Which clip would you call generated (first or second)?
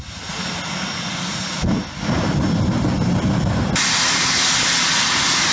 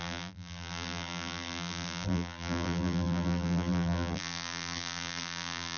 second